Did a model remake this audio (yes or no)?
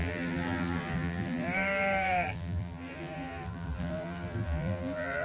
yes